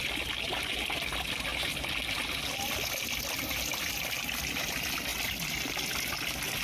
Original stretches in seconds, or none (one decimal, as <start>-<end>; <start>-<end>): 0.0-6.6